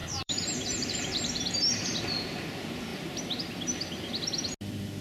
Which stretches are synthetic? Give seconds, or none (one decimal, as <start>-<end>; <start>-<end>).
0.0-2.4